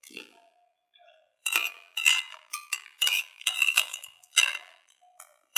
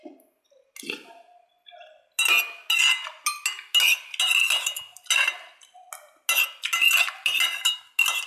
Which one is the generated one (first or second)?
first